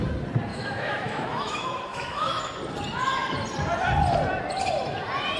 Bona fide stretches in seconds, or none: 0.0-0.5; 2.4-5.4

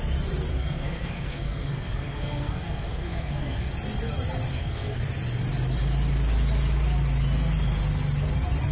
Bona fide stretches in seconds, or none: 0.0-0.5; 3.7-4.5; 5.0-8.7

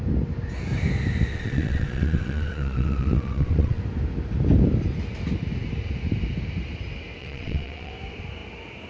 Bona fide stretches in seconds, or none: 0.0-1.3; 3.8-7.2; 7.9-8.9

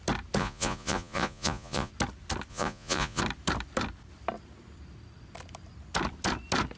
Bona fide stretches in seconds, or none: 0.0-0.4; 1.9-2.5; 3.2-6.8

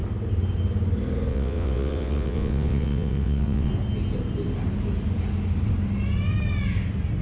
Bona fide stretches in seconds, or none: 0.0-1.3; 3.7-7.2

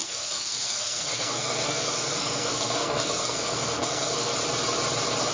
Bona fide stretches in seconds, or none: 4.3-5.3

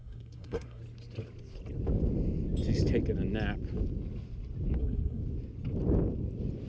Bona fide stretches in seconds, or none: 0.8-4.8; 5.2-6.7

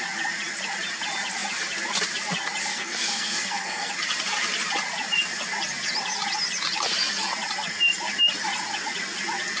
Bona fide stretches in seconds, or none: 0.0-2.7; 3.9-9.6